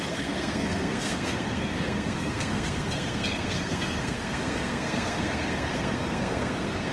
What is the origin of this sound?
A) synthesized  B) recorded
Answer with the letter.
A